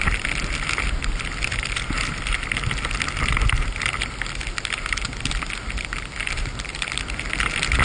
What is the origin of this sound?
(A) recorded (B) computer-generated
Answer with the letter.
A